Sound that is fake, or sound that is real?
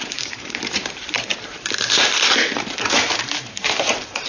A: fake